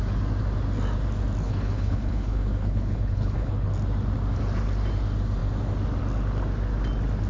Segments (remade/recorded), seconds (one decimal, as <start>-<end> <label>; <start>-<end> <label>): 0.0-1.4 recorded; 1.4-3.7 remade; 3.7-7.3 recorded